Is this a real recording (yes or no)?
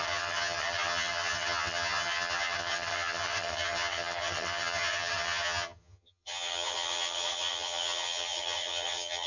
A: no